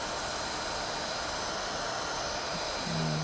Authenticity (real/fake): real